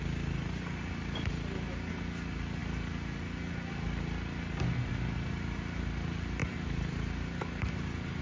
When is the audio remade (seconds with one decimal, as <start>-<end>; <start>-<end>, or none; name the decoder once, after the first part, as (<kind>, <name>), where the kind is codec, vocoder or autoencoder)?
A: 6.4-8.2 (vocoder, BigVGAN v2)